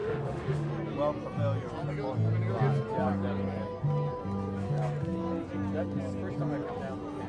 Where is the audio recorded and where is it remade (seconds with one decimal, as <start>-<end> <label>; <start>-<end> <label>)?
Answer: 0.0-0.7 remade; 0.7-7.3 recorded